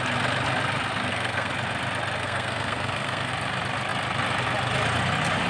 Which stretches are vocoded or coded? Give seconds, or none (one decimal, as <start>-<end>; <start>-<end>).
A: 1.0-1.5; 2.2-3.3